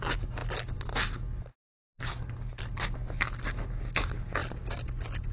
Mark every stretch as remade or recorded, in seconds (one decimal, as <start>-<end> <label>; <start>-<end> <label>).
0.0-5.3 recorded